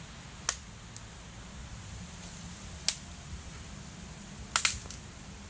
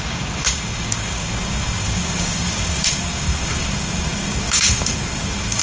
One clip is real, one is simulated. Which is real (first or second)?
first